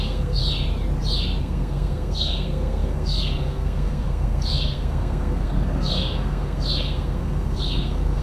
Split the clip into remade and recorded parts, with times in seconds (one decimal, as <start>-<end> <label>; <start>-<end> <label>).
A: 0.0-0.4 remade; 0.4-1.4 recorded; 1.4-8.2 remade